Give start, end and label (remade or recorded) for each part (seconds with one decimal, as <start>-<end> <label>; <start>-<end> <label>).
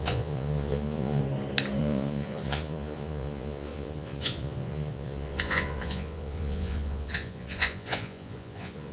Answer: 0.0-1.2 remade; 1.2-1.8 recorded; 1.8-8.9 remade